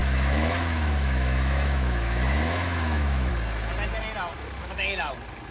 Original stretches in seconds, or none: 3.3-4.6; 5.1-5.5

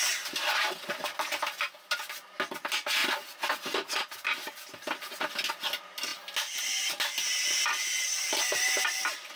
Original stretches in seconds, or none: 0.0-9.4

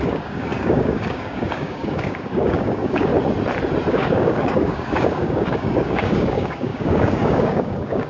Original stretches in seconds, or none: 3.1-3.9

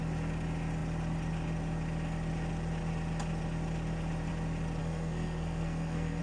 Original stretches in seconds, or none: 0.0-4.8

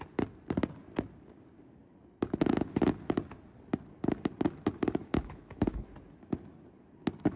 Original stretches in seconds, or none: 0.0-5.0; 5.9-7.4

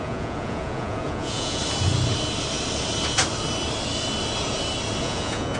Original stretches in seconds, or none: 1.6-5.0